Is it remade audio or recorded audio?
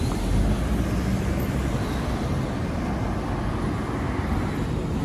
recorded